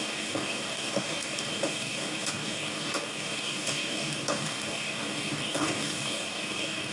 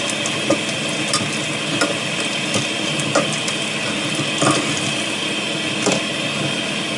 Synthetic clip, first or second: first